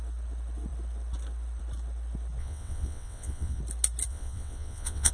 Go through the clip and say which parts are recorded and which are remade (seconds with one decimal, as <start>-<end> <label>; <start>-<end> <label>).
0.0-2.4 recorded; 2.4-3.6 remade; 3.6-4.1 recorded; 4.1-5.1 remade